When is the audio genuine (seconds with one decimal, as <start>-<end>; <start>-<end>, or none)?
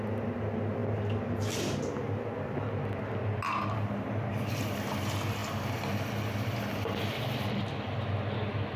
0.0-8.8